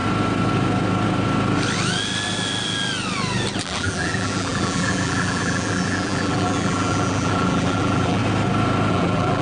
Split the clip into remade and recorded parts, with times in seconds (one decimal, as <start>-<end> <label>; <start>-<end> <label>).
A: 0.0-3.6 recorded; 3.6-8.2 remade; 8.2-8.9 recorded; 8.9-9.4 remade

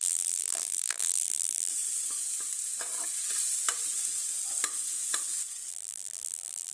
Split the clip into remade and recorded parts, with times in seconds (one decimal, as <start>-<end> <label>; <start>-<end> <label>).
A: 0.0-1.7 remade; 1.7-5.7 recorded; 5.7-6.7 remade

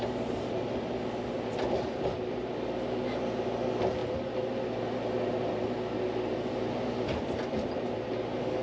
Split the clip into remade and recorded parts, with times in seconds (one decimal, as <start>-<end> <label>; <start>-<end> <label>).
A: 0.0-8.6 recorded

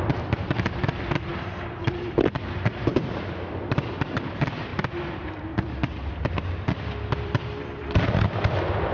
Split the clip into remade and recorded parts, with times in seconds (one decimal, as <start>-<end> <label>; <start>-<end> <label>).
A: 0.0-8.9 remade

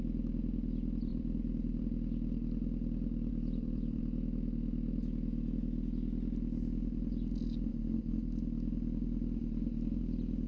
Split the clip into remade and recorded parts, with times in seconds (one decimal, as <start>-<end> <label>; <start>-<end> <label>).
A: 0.0-1.1 recorded; 1.1-1.8 remade; 1.8-3.3 recorded; 3.3-4.0 remade; 4.0-10.5 recorded

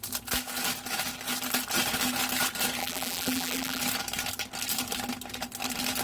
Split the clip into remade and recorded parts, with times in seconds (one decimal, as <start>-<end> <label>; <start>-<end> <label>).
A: 0.0-2.8 recorded; 2.8-3.8 remade; 3.8-6.0 recorded